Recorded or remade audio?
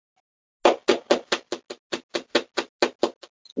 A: recorded